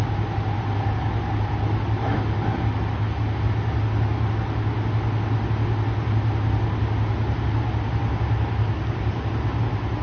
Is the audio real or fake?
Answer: real